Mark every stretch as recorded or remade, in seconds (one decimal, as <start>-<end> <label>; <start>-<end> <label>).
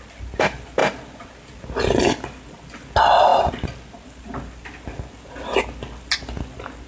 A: 0.0-6.9 recorded